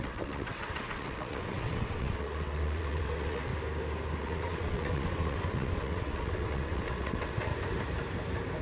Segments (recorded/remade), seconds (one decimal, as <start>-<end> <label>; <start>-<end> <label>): 0.0-3.5 remade; 3.5-4.2 recorded; 4.2-7.5 remade; 7.5-8.6 recorded